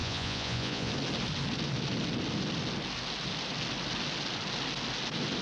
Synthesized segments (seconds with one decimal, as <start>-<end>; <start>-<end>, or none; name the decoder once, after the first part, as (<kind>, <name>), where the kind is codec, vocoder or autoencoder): 0.0-0.9 (vocoder, Vocos)